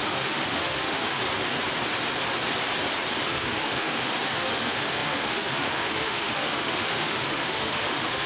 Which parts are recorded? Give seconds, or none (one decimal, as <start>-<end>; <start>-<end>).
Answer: 1.2-3.2